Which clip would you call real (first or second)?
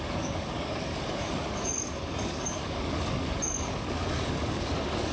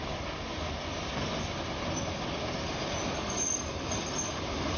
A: second